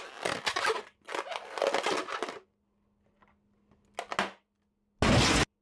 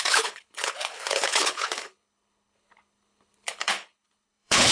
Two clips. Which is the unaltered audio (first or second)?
first